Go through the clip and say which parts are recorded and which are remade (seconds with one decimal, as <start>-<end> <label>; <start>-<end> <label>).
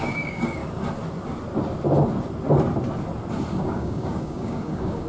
0.0-0.6 remade; 0.6-3.5 recorded; 3.5-5.1 remade